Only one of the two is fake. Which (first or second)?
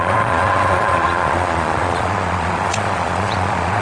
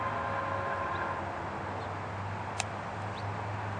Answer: first